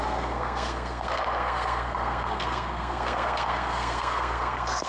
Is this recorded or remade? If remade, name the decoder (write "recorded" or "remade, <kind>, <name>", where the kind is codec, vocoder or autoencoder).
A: remade, codec, SNAC